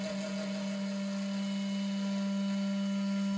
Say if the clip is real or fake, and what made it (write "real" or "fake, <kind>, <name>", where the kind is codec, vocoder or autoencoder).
real